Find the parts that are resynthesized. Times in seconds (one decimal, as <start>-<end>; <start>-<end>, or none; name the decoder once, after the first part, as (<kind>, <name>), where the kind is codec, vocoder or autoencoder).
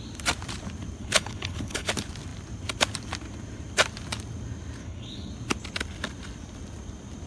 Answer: 1.0-1.9 (codec, HILCodec); 4.8-5.3